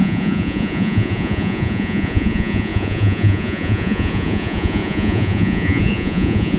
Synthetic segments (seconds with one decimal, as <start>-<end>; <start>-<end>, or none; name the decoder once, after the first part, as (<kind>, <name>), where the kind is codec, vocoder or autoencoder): 0.0-6.6 (vocoder, Vocos)

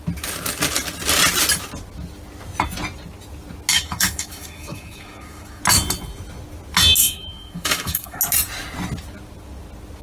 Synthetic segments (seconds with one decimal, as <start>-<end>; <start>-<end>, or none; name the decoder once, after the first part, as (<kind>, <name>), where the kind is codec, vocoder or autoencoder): 3.7-5.6 (autoencoder, DAC-VAE); 7.0-8.2

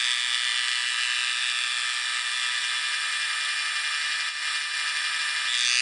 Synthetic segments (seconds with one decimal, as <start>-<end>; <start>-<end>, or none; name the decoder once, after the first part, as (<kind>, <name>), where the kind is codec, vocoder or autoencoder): none

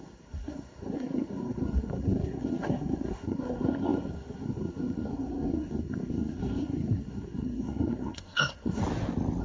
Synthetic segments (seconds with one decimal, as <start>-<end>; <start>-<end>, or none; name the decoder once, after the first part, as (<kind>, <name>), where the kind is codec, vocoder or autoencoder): 0.0-8.8 (codec, SNAC)

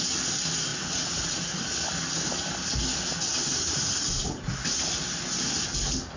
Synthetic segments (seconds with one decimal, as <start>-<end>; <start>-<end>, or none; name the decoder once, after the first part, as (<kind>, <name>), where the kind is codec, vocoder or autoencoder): 0.7-1.6 (vocoder, Vocos); 3.5-4.5

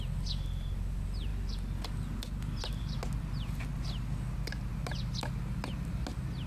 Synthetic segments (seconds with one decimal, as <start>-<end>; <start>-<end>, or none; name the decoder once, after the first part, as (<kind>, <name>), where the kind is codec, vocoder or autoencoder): none